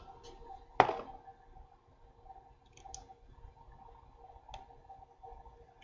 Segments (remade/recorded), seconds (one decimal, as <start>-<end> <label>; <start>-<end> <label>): 0.0-5.8 recorded